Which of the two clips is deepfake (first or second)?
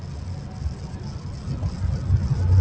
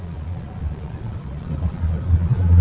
second